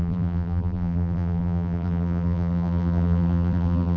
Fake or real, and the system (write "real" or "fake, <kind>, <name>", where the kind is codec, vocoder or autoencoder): fake, vocoder, BigVGAN v2